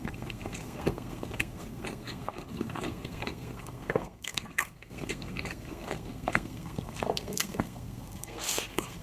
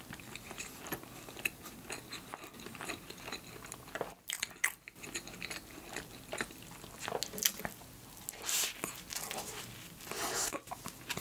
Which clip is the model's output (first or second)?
first